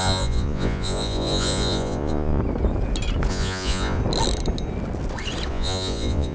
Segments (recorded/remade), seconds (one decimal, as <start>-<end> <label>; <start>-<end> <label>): 0.0-2.4 remade; 2.4-3.3 recorded; 3.3-4.0 remade; 4.0-5.5 recorded; 5.5-6.3 remade